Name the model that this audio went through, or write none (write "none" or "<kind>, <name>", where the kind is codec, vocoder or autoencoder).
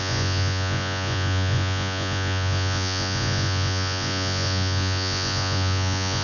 vocoder, Vocos